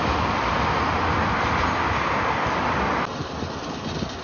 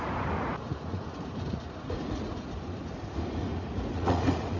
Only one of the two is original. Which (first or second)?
first